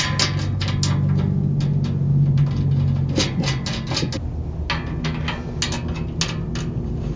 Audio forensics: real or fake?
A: real